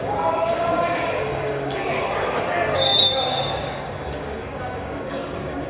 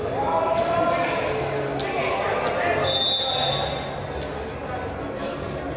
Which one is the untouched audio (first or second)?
second